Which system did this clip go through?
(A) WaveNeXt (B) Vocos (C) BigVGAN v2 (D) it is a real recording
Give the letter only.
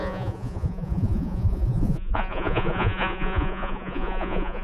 B